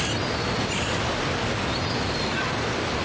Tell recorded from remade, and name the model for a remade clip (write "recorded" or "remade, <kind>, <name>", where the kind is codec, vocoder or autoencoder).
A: recorded